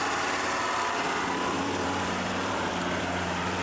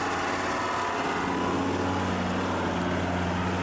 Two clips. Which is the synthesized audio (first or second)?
first